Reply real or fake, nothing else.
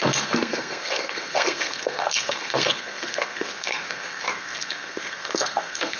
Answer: fake